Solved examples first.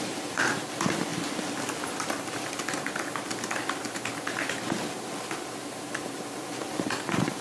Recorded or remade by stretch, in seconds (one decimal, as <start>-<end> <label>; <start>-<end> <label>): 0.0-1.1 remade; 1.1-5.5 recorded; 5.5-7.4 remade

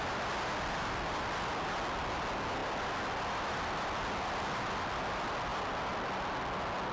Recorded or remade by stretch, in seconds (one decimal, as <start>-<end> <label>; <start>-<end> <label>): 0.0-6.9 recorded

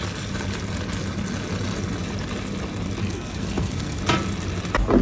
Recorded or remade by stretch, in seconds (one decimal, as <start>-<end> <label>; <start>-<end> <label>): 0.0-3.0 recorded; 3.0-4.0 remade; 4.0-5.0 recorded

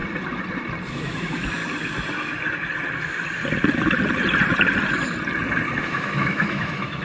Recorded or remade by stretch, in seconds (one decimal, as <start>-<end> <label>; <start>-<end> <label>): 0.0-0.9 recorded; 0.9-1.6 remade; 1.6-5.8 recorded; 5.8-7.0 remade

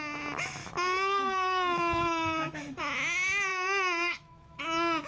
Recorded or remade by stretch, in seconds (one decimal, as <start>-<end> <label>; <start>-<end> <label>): 0.0-0.6 recorded; 0.6-2.8 remade; 2.8-3.5 recorded; 3.5-4.6 remade; 4.6-5.1 recorded